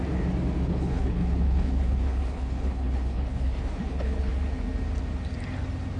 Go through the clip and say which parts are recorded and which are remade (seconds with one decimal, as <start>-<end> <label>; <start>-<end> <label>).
0.0-0.7 recorded; 0.7-4.3 remade; 4.3-6.0 recorded